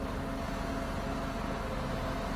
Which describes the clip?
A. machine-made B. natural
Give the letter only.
B